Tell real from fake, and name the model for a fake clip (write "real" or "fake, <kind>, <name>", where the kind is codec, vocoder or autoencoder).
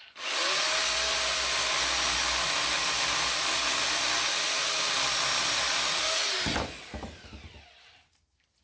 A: real